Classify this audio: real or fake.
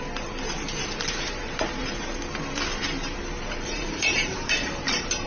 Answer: fake